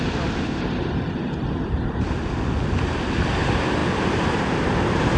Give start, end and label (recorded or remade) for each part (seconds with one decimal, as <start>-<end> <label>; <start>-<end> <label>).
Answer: 0.0-5.2 recorded